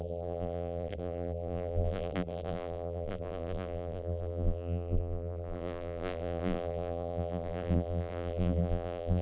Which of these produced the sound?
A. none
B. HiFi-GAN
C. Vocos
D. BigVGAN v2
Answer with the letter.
D